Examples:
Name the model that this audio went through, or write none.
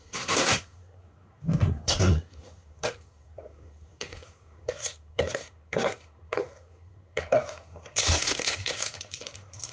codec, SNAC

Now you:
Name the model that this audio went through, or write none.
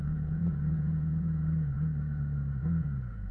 vocoder, Vocos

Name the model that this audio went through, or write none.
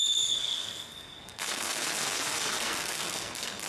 codec, SNAC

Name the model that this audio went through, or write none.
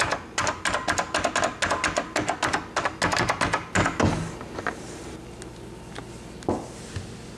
none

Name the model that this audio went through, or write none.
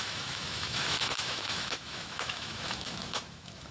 autoencoder, DAC-VAE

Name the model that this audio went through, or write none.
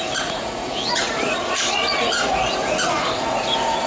vocoder, Vocos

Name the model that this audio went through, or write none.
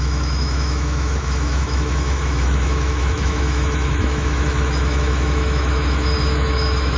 autoencoder, DAC-VAE